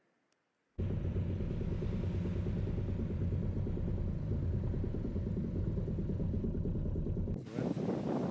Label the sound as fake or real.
real